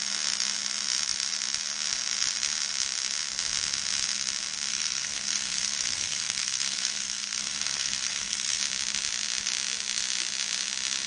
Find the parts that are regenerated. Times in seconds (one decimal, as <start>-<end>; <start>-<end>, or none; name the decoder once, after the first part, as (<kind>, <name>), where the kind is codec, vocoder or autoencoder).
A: 4.7-8.6 (codec, SNAC)